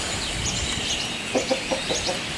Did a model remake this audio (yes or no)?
yes